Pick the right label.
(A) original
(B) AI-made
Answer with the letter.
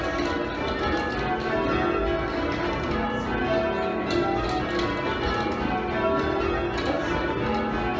A